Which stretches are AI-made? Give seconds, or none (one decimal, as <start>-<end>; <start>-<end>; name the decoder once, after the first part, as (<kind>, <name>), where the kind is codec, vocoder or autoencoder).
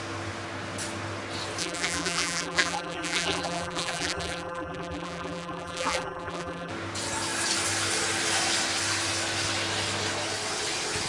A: 1.6-6.7 (vocoder, BigVGAN v2)